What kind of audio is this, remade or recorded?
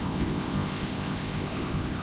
remade